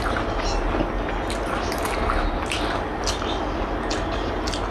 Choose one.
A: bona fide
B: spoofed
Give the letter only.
A